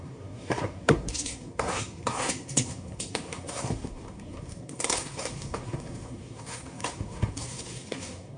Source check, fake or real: fake